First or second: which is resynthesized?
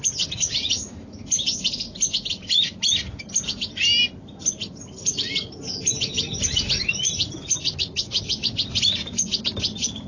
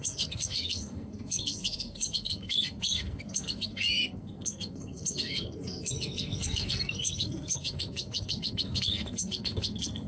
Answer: second